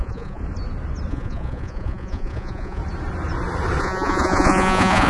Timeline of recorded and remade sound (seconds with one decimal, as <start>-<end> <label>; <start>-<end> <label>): 0.0-0.4 remade; 0.4-1.1 recorded; 1.1-2.8 remade; 2.8-3.8 recorded; 3.8-5.1 remade